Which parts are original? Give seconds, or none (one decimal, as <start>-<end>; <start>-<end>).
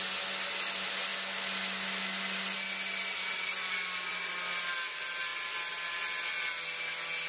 0.0-7.3